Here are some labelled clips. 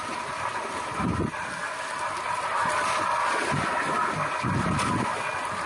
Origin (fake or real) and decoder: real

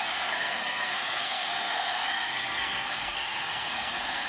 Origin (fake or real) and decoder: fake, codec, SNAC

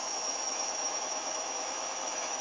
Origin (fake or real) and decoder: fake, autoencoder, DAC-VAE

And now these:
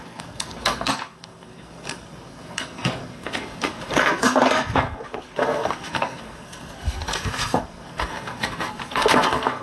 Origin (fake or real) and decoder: fake, codec, SNAC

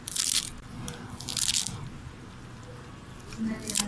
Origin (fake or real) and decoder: real